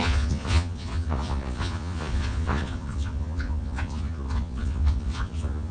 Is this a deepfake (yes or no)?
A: yes